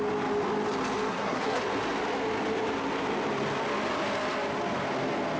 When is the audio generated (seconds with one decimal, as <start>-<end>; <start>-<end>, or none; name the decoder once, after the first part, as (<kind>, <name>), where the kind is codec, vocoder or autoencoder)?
1.1-1.6 (codec, SNAC)